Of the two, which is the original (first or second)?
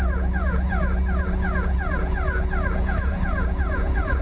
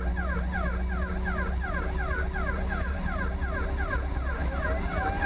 second